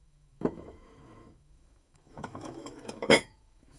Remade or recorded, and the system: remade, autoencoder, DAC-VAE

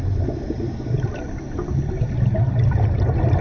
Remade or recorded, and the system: recorded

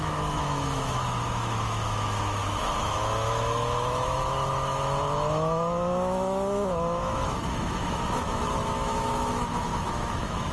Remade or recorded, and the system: remade, autoencoder, DAC-VAE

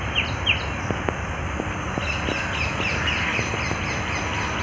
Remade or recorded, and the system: recorded